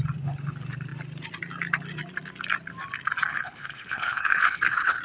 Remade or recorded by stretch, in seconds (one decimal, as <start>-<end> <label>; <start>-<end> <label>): 0.0-3.3 recorded; 3.3-5.0 remade